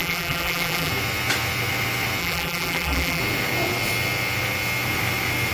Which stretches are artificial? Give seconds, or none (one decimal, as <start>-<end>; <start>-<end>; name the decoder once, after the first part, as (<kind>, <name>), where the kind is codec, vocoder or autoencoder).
0.0-0.9 (vocoder, BigVGAN v2); 2.2-3.2